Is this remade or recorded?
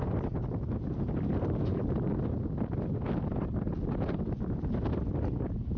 recorded